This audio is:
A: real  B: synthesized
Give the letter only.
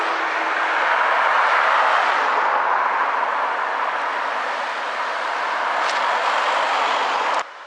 A